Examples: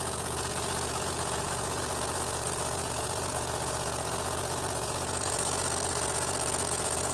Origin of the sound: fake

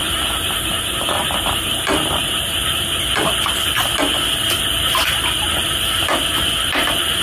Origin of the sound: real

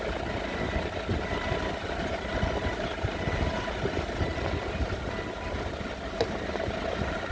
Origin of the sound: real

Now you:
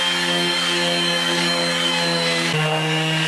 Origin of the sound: fake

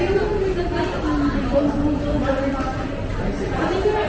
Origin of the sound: real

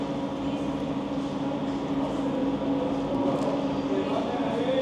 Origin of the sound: real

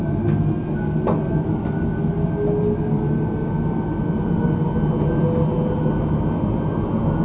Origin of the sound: real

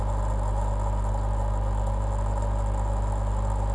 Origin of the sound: real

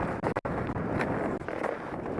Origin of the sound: real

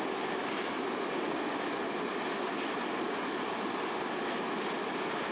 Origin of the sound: real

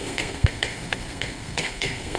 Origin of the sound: fake